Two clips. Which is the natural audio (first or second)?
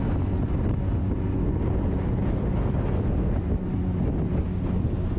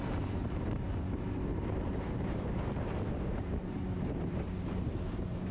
first